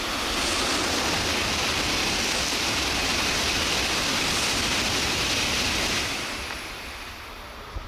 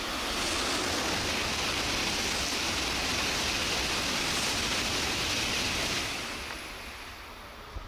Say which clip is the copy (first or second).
first